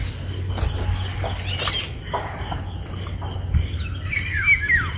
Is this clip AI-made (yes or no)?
no